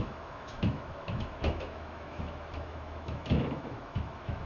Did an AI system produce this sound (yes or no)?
yes